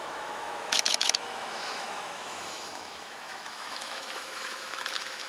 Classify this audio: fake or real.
fake